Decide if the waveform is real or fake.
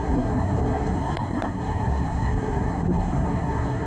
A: fake